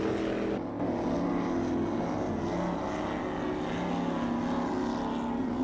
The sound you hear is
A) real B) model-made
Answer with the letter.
A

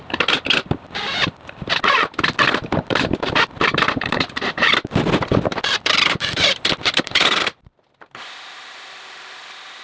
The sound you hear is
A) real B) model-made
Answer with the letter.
B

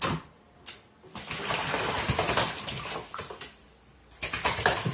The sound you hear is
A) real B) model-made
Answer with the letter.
A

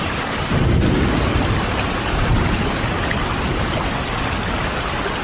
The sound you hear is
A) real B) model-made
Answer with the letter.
A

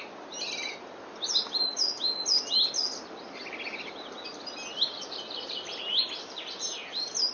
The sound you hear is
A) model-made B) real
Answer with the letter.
B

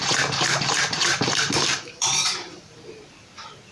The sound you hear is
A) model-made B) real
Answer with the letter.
A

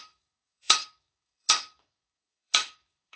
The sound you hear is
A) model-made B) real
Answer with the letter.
A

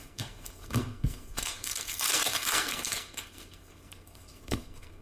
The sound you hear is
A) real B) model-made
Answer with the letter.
B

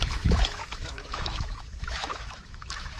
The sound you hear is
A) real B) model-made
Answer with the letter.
B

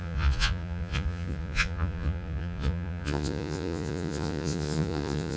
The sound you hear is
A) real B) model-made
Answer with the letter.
B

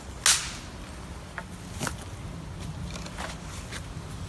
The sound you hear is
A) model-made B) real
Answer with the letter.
B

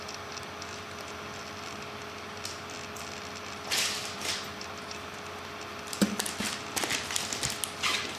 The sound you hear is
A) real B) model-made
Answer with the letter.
A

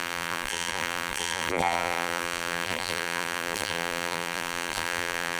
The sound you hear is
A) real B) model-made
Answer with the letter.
B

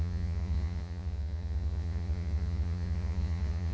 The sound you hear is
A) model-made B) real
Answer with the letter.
A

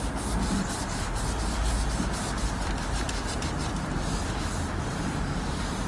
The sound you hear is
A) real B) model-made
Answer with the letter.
A